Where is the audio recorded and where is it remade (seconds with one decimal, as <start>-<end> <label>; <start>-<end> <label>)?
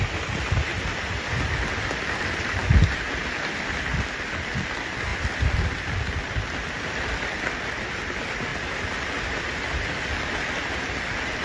0.0-0.7 recorded; 0.7-2.2 remade; 2.2-5.1 recorded; 5.1-7.0 remade; 7.0-11.4 recorded